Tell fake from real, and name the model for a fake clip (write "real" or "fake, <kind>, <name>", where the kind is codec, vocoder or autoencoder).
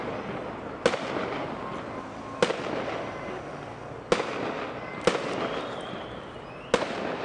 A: real